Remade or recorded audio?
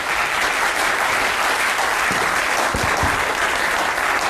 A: recorded